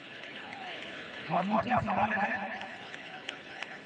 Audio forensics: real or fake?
fake